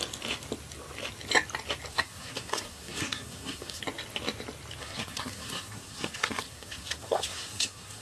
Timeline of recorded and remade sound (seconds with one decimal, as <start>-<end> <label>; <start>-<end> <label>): 0.0-1.9 recorded; 1.9-3.8 remade; 3.8-4.8 recorded; 4.8-8.0 remade